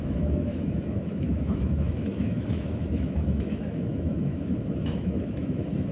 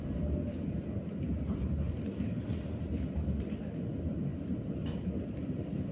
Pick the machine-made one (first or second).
first